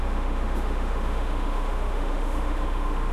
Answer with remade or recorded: remade